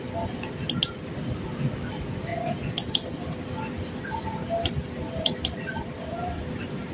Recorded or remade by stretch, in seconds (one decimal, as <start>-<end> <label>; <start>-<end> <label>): 0.0-6.9 recorded